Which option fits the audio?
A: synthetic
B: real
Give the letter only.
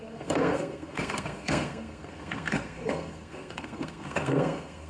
A